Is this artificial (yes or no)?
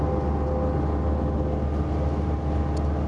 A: no